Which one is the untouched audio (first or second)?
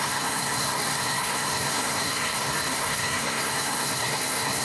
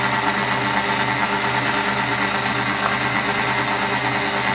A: second